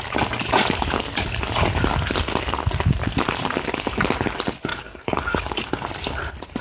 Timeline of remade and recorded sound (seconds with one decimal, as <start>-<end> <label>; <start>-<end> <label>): 0.0-4.7 recorded; 4.7-5.7 remade; 5.7-6.6 recorded